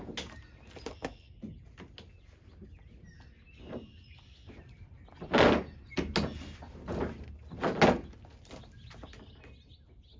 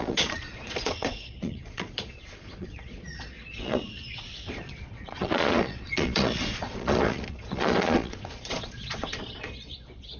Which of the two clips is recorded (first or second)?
first